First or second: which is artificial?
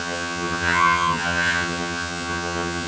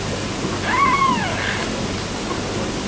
first